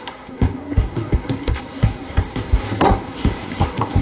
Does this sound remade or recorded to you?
remade